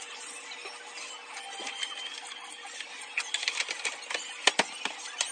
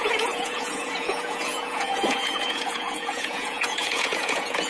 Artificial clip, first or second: second